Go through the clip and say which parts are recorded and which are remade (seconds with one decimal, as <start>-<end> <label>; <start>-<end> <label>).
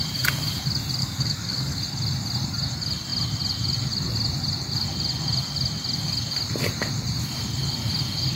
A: 0.0-1.0 recorded; 1.0-1.8 remade; 1.8-8.4 recorded